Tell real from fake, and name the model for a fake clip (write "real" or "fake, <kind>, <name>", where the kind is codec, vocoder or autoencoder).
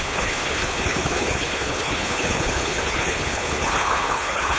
fake, codec, HILCodec